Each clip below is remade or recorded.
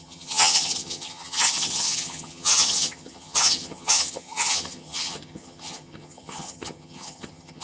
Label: remade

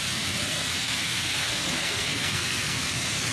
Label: remade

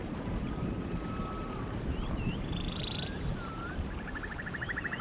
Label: remade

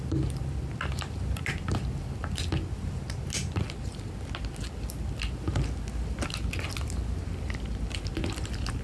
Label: recorded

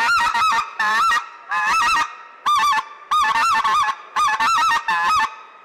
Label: recorded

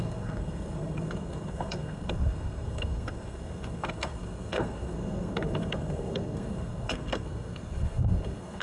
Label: remade